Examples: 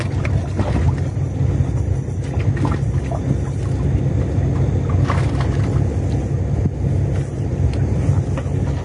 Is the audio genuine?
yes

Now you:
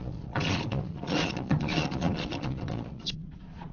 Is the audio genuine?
no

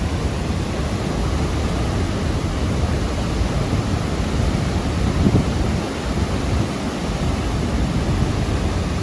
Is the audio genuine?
yes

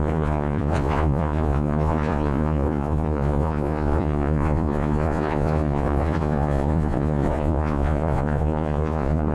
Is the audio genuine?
no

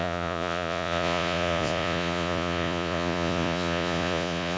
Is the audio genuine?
no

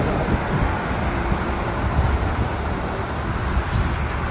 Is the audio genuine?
yes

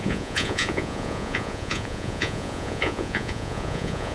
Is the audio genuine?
no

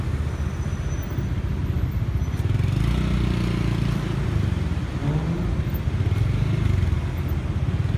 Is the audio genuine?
yes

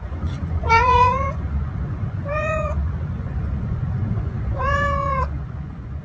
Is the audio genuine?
no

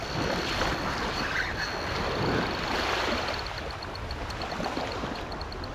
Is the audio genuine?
yes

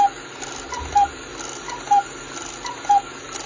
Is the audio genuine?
yes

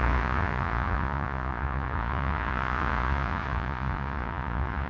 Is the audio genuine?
no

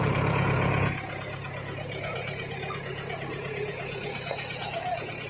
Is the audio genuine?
no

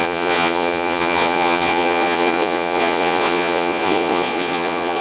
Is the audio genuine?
no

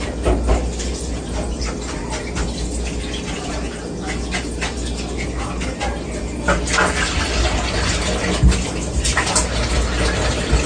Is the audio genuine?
yes